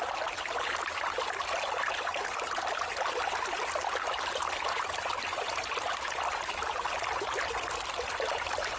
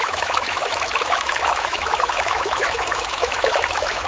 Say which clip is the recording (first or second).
first